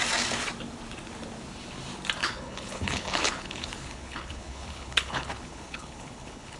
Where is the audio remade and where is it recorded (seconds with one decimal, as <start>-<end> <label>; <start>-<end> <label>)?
0.0-2.2 recorded; 2.2-6.6 remade